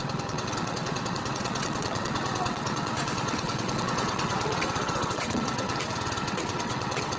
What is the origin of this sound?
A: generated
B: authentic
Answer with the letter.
A